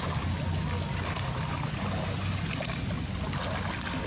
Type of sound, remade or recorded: recorded